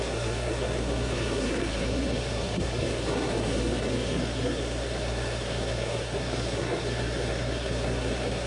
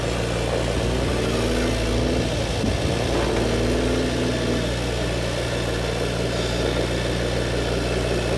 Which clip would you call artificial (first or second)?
first